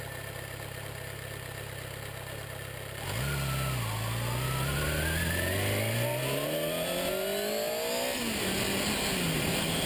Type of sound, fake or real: real